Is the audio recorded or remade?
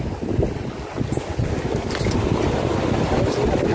recorded